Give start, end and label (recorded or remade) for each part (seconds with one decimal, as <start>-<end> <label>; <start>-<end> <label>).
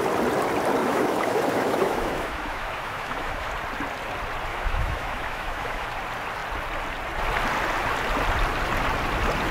0.0-0.8 recorded; 0.8-3.5 remade; 3.5-4.5 recorded; 4.5-5.9 remade; 5.9-9.5 recorded